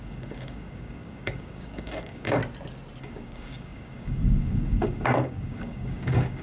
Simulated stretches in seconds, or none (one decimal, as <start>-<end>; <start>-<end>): 0.0-2.4; 3.0-6.4